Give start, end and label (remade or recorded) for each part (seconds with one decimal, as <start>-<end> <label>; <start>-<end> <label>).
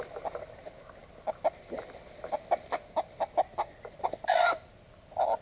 0.0-5.4 recorded